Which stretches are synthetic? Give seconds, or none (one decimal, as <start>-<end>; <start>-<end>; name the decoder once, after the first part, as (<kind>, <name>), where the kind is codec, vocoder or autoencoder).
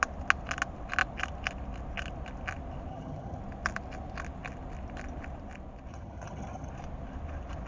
2.9-3.4 (vocoder, HiFi-GAN); 5.9-6.7